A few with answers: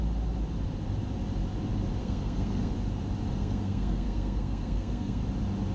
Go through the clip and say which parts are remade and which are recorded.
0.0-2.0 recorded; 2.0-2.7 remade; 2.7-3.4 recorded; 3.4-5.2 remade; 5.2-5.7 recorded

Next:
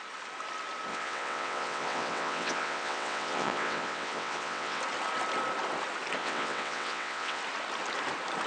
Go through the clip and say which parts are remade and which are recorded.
0.0-0.9 recorded; 0.9-4.8 remade; 4.8-6.2 recorded; 6.2-7.4 remade; 7.4-8.5 recorded

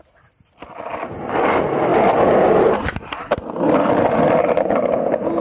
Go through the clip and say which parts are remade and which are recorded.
0.0-5.4 recorded